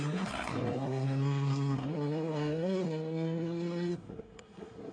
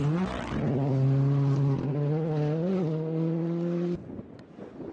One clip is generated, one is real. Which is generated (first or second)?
first